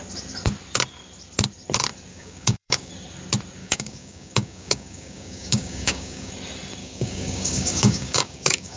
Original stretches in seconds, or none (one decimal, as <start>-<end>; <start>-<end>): 0.0-2.1; 2.9-3.6; 6.3-6.8